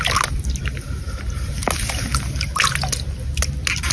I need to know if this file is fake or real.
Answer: real